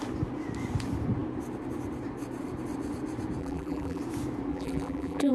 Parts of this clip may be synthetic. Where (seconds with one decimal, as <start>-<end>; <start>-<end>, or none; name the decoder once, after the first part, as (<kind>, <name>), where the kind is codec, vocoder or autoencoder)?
3.4-4.0 (vocoder, BigVGAN v2); 4.5-5.3